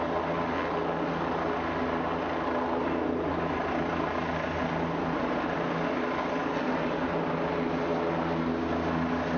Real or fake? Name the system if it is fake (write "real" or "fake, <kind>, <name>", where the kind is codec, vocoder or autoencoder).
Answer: real